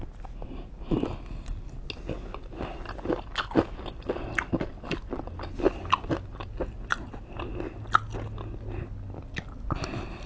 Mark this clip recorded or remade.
recorded